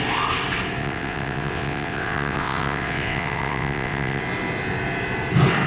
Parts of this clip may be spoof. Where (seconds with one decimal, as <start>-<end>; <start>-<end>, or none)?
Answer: 0.8-4.2